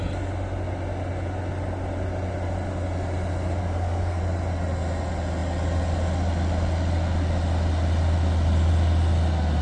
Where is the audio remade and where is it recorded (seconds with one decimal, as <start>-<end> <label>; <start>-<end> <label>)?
0.0-3.6 recorded; 3.6-4.2 remade; 4.2-9.6 recorded